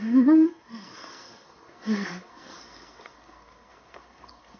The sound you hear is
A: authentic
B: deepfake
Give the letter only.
B